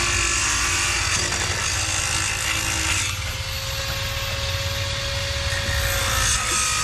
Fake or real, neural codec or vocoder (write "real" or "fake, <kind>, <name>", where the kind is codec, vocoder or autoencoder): real